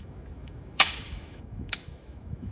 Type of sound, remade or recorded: remade